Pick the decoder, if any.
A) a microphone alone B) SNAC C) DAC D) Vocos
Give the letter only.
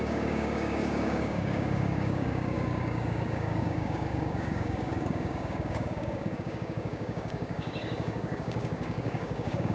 C